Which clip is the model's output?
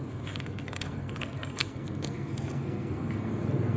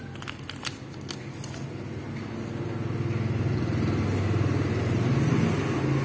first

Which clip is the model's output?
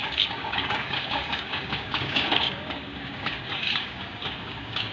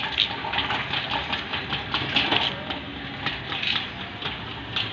first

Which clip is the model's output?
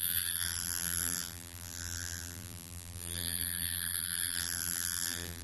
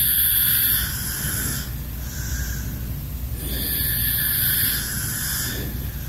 first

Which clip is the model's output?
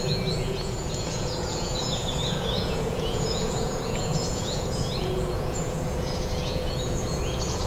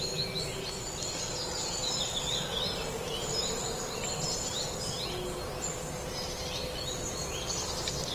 first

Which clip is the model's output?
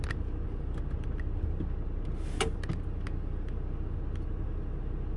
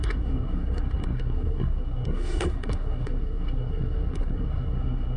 second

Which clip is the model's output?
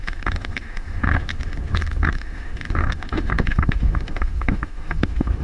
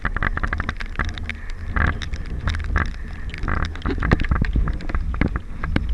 first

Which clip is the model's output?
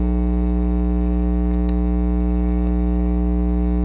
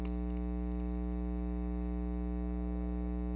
first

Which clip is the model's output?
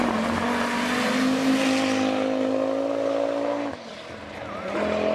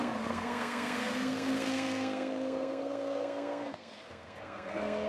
second